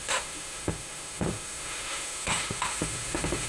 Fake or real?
fake